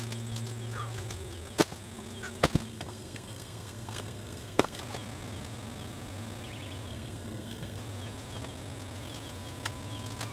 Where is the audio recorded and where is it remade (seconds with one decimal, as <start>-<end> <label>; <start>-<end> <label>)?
0.0-2.7 recorded; 2.7-4.8 remade; 4.8-6.9 recorded; 6.9-7.8 remade; 7.8-10.3 recorded